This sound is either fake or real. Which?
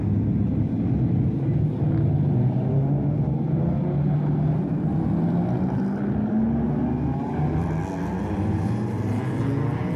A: real